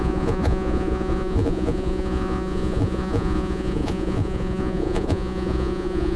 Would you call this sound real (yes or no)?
no